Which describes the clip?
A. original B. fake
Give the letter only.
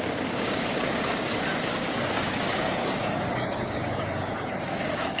B